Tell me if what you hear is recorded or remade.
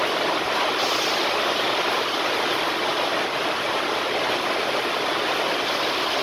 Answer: recorded